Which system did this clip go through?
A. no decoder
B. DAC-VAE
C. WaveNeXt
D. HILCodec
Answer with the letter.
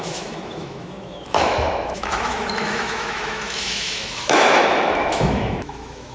B